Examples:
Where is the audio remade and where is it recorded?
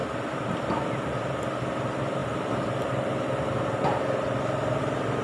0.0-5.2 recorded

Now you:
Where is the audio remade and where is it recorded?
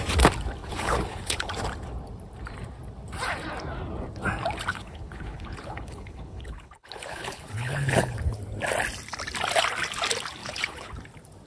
0.0-0.6 recorded; 0.6-1.5 remade; 1.5-4.7 recorded; 4.7-8.4 remade; 8.4-10.4 recorded; 10.4-10.9 remade; 10.9-11.5 recorded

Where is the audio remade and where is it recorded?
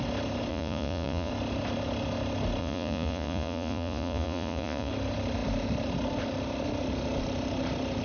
0.0-0.5 recorded; 0.5-1.3 remade; 1.3-2.6 recorded; 2.6-4.9 remade; 4.9-8.0 recorded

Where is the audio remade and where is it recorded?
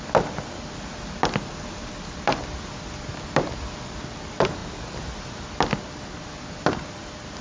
0.0-7.4 recorded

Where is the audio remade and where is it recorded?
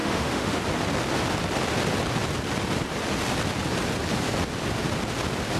0.0-0.6 remade; 0.6-5.6 recorded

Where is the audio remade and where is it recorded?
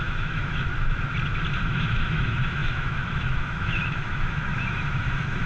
0.0-0.7 remade; 0.7-1.6 recorded; 1.6-5.5 remade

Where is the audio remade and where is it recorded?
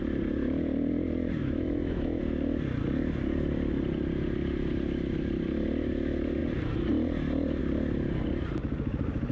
0.0-1.4 recorded; 1.4-2.2 remade; 2.2-9.3 recorded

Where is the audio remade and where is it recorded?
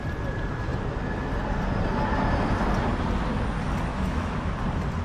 0.0-3.9 recorded; 3.9-4.5 remade; 4.5-5.0 recorded